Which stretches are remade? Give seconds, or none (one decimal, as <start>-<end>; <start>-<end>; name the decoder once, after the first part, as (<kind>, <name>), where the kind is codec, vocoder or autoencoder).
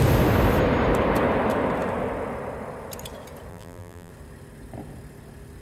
3.5-4.1 (vocoder, BigVGAN v2)